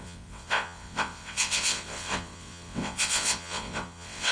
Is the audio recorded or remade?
remade